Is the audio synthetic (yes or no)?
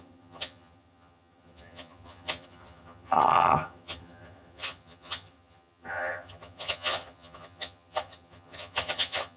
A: yes